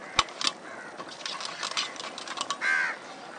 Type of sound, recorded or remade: recorded